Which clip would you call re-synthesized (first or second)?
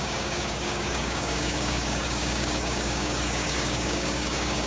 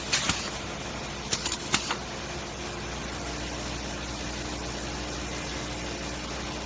first